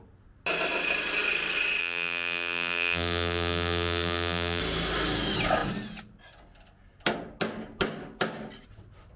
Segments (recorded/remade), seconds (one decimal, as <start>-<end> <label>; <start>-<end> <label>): 0.0-1.8 recorded; 1.8-4.6 remade; 4.6-9.2 recorded